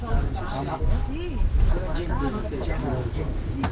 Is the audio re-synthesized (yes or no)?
no